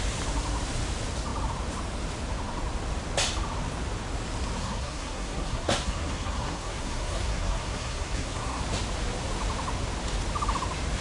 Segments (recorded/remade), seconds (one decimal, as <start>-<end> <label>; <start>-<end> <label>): 0.0-4.6 recorded; 4.6-8.6 remade; 8.6-11.0 recorded